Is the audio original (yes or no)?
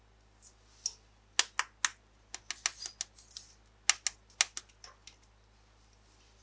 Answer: yes